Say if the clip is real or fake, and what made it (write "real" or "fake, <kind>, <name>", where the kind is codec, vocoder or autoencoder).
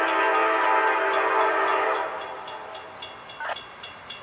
real